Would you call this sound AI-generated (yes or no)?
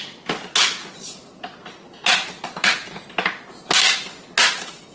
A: no